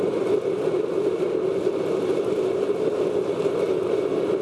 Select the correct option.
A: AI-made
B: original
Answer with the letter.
B